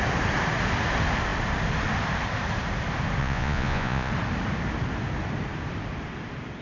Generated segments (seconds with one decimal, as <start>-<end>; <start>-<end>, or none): 3.2-4.1